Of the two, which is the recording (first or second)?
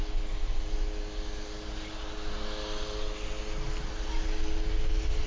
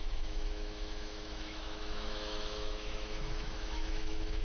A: first